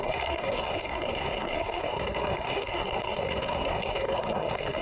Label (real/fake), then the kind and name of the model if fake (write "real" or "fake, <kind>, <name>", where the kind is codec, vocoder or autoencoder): fake, codec, SNAC